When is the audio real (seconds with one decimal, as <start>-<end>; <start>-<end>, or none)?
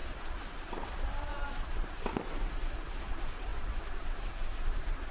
0.0-5.1